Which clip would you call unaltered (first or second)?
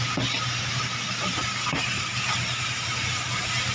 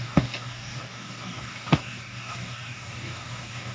first